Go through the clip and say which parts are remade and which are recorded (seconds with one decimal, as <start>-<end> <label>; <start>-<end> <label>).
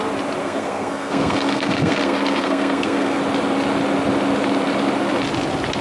0.0-0.4 recorded; 0.4-3.2 remade; 3.2-5.8 recorded